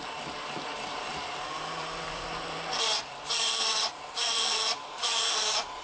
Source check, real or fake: fake